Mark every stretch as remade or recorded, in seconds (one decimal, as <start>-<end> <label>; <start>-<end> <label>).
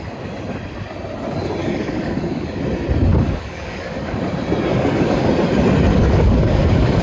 0.0-1.6 recorded; 1.6-2.6 remade; 2.6-3.1 recorded; 3.1-4.2 remade; 4.2-4.7 recorded; 4.7-5.3 remade; 5.3-5.9 recorded; 5.9-7.0 remade